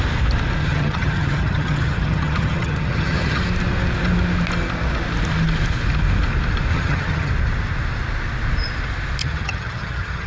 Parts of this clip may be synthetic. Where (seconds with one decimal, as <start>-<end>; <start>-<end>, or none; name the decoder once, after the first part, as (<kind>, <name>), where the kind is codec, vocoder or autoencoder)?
0.6-3.4 (vocoder, HiFi-GAN); 6.7-7.3; 9.2-10.3